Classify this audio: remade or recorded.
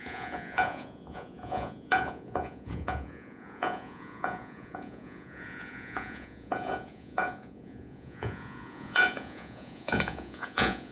remade